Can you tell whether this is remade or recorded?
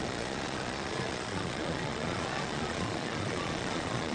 remade